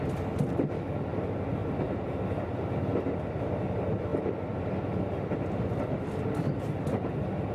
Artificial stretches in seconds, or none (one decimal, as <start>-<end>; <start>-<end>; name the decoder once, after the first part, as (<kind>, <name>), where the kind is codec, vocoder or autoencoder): none